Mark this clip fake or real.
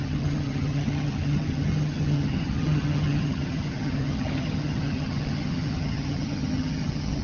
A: fake